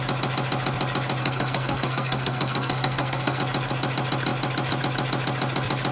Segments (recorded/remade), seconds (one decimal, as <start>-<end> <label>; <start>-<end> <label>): 0.0-1.2 recorded; 1.2-3.4 remade; 3.4-5.9 recorded